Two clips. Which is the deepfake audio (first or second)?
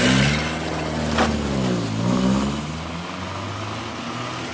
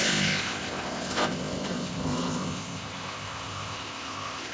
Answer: second